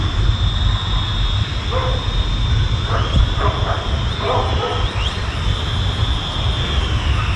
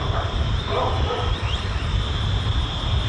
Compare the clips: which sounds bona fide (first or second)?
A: first